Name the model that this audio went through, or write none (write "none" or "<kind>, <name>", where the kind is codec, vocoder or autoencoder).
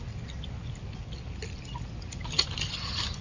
none